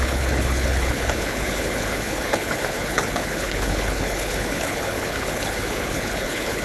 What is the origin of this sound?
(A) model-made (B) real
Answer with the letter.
A